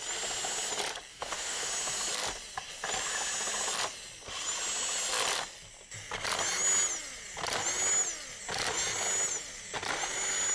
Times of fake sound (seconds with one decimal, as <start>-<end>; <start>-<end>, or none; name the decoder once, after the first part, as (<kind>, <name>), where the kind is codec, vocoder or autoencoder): 1.1-1.7 (autoencoder, DAC-VAE)